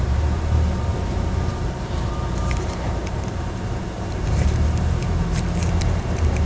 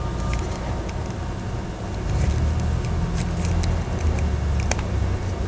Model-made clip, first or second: first